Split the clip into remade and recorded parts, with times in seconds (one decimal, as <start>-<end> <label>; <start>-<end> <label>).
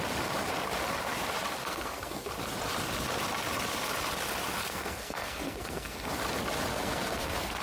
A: 0.0-1.6 recorded; 1.6-2.3 remade; 2.3-4.6 recorded; 4.6-6.1 remade; 6.1-6.7 recorded; 6.7-7.6 remade